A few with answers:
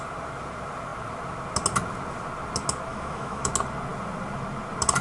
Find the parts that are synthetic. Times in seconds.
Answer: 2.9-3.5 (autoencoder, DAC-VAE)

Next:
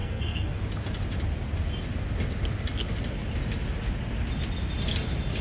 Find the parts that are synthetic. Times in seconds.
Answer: 0.0-0.6 (codec, SNAC)